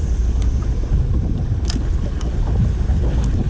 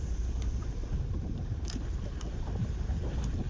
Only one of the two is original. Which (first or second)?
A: first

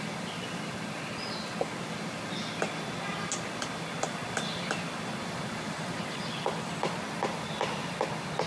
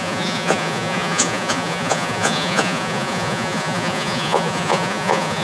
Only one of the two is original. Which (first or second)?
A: first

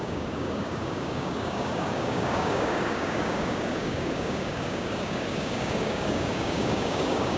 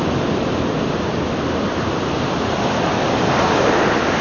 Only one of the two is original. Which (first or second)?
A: second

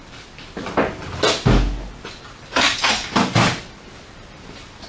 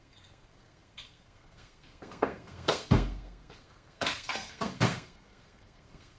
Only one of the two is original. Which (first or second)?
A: first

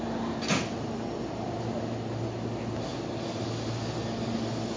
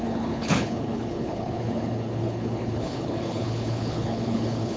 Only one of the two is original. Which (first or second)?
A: first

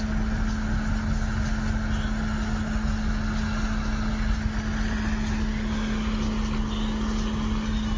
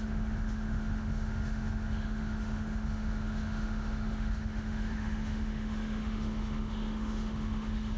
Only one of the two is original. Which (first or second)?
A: first